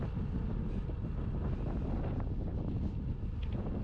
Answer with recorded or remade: recorded